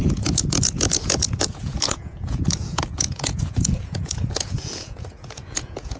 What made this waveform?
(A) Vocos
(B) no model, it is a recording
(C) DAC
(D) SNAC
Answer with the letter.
A